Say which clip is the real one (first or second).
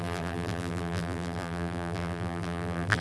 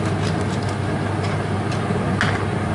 second